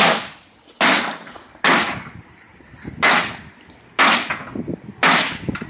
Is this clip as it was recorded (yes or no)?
yes